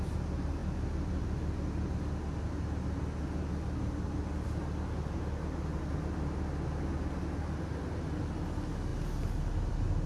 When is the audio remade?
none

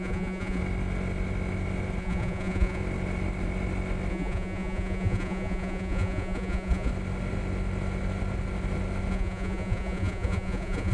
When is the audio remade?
0.0-0.6; 2.0-2.8; 4.1-6.9; 9.1-10.9

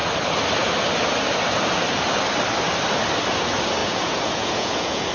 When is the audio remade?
3.8-5.1

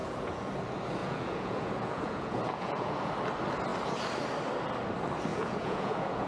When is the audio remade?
0.0-0.5; 1.0-3.1; 5.3-6.3